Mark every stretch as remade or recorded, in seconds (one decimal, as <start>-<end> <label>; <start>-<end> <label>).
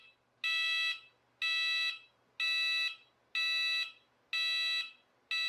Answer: 0.0-5.5 recorded